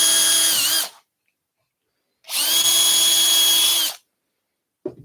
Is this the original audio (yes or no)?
yes